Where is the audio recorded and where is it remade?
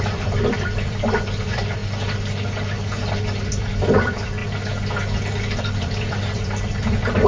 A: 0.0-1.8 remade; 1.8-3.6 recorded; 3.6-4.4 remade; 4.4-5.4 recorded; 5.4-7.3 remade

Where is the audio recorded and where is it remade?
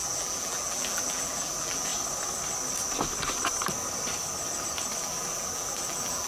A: 0.0-1.9 remade; 1.9-5.0 recorded; 5.0-6.3 remade